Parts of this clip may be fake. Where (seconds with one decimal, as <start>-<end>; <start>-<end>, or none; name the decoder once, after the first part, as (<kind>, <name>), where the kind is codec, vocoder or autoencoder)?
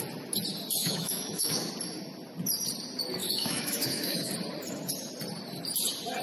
0.8-1.7 (autoencoder, DAC-VAE); 3.2-4.3